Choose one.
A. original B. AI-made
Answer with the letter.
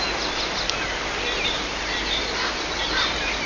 A